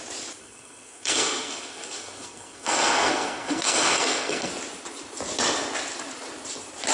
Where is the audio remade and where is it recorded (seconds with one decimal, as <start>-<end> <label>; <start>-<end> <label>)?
0.0-0.4 recorded; 0.4-4.5 remade; 4.5-6.9 recorded